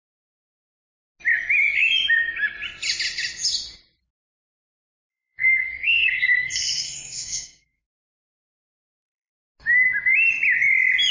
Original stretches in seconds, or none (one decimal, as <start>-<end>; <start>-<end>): 0.0-5.1; 9.3-11.1